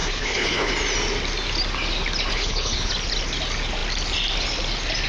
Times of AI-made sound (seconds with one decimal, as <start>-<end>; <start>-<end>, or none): 0.0-0.7; 2.3-2.9